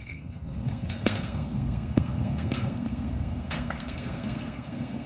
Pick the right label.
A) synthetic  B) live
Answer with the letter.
A